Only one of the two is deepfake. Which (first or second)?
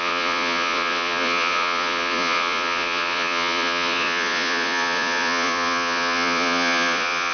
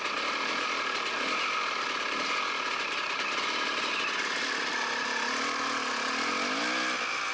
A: first